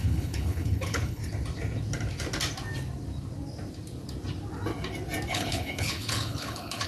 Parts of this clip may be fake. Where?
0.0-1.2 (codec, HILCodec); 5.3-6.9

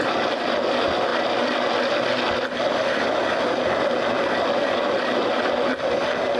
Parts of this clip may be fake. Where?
none

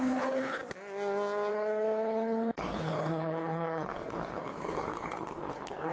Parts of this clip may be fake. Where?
0.0-0.6 (codec, HILCodec); 1.5-5.9

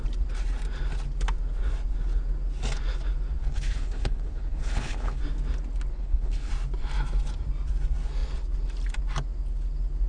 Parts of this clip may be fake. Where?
3.4-5.2 (codec, HILCodec); 5.9-6.5

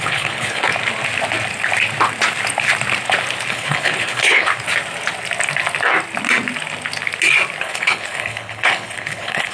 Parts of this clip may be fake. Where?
0.0-0.7 (codec, HILCodec); 3.5-4.5; 7.6-9.5

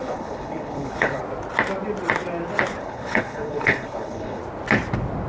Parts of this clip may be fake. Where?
0.0-1.2 (codec, HILCodec); 2.8-4.4